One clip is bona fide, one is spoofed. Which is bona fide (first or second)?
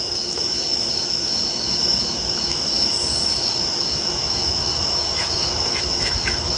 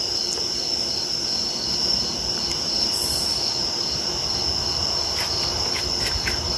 second